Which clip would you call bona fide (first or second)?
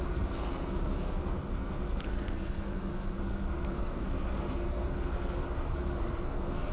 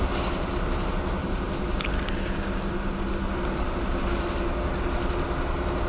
second